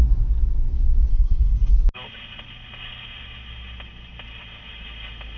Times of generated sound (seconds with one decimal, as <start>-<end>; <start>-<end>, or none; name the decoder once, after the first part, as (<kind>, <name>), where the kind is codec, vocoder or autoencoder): 1.1-1.7 (codec, SNAC)